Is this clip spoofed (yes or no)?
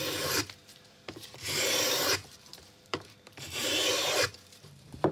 yes